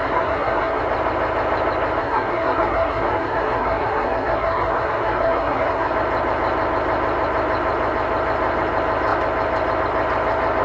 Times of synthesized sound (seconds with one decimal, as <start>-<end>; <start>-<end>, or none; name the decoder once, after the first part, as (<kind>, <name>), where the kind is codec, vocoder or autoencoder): 0.0-0.8 (codec, SNAC); 2.0-5.9